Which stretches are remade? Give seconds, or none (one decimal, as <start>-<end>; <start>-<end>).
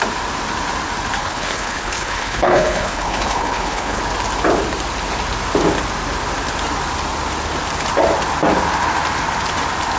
1.2-4.0